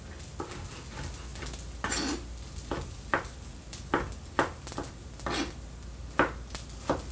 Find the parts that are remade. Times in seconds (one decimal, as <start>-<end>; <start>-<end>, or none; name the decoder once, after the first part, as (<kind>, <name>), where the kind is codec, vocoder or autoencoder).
none